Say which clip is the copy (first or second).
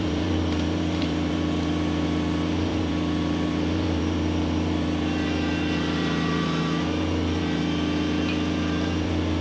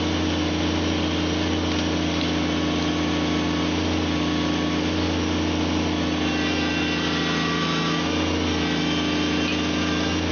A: first